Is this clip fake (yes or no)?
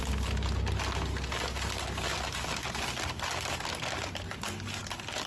no